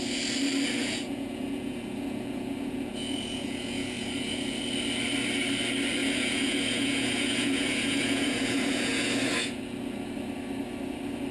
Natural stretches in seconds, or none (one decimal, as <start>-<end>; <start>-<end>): 0.0-0.8; 4.6-6.0; 9.6-11.3